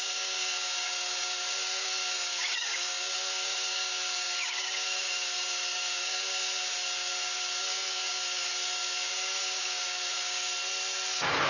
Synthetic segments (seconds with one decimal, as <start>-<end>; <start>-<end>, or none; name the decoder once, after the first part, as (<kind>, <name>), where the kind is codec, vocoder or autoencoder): 0.0-10.5 (codec, DAC); 11.1-11.5